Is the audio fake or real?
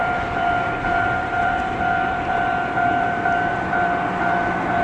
fake